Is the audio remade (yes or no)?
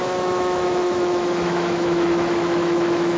yes